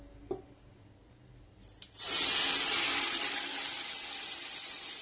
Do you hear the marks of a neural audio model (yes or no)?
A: no